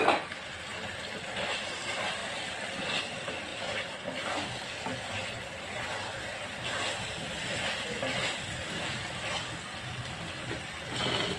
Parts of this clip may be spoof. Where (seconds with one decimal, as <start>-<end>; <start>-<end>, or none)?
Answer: none